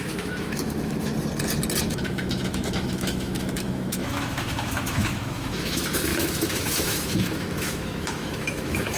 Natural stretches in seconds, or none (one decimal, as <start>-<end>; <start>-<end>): 1.1-1.8